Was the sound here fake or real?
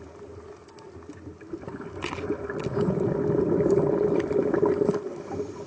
real